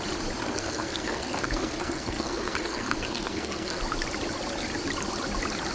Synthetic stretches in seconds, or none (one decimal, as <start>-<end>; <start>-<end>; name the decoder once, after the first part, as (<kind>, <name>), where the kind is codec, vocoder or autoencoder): 0.4-3.8 (codec, SNAC)